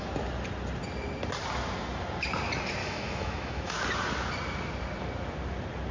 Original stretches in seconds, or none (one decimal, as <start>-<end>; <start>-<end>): 0.0-2.8; 3.7-5.9